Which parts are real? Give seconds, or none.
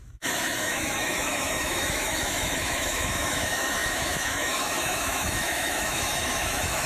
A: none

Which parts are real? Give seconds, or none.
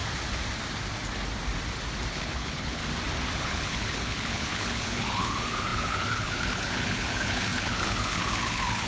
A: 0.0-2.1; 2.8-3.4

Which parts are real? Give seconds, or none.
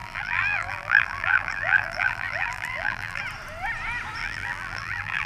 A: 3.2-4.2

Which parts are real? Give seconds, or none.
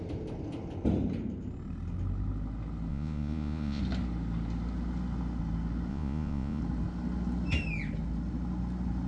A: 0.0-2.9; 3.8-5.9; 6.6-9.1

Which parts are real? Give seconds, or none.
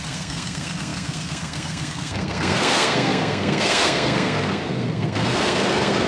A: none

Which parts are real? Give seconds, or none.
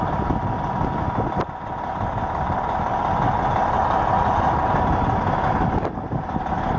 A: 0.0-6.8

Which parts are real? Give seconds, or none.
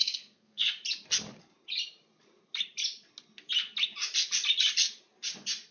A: 0.7-5.7